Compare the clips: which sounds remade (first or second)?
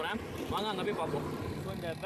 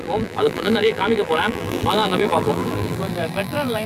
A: second